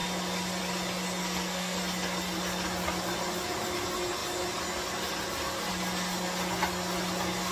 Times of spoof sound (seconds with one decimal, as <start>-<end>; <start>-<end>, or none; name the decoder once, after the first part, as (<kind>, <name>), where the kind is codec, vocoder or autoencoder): 1.2-1.8 (codec, SNAC)